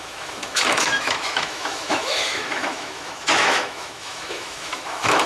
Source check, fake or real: fake